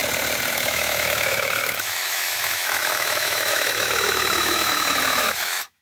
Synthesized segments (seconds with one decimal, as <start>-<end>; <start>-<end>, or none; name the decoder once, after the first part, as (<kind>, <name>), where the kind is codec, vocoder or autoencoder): 0.5-5.8 (autoencoder, DAC-VAE)